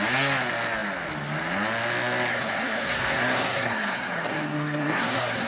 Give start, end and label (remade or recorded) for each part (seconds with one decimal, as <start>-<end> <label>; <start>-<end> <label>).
0.0-2.3 recorded; 2.3-5.5 remade

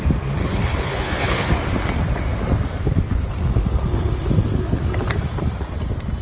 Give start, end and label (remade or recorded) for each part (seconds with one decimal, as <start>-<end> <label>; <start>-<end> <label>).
0.0-0.4 recorded; 0.4-1.5 remade; 1.5-2.8 recorded; 2.8-3.3 remade; 3.3-6.2 recorded